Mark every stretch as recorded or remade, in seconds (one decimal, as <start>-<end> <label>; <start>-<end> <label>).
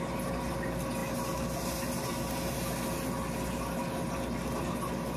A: 0.0-5.2 recorded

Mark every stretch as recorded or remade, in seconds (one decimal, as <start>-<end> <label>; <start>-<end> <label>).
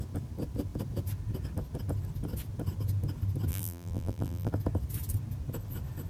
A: 0.0-3.5 recorded; 3.5-4.5 remade; 4.5-6.1 recorded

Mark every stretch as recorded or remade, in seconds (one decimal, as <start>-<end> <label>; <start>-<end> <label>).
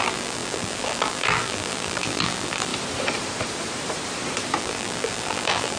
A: 0.0-2.7 remade; 2.7-4.6 recorded; 4.6-5.8 remade